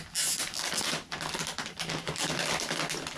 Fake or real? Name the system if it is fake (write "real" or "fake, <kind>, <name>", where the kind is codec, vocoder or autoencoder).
real